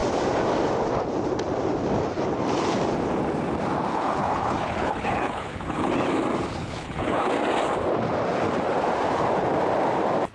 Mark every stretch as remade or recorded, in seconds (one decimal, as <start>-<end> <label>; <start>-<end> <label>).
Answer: 0.0-3.9 recorded; 3.9-5.9 remade; 5.9-6.6 recorded; 6.6-7.3 remade; 7.3-10.3 recorded

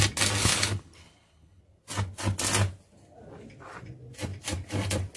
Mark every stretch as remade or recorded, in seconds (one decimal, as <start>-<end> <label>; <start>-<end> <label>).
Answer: 0.0-0.4 recorded; 0.4-1.6 remade; 1.6-5.2 recorded